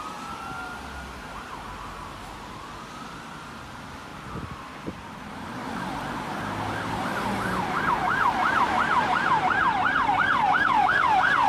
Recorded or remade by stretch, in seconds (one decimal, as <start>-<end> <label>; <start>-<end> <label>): 0.0-4.1 recorded; 4.1-5.5 remade; 5.5-7.1 recorded; 7.1-7.9 remade; 7.9-11.5 recorded